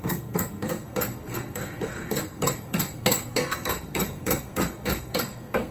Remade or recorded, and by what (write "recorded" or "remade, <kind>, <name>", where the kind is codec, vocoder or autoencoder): remade, codec, SNAC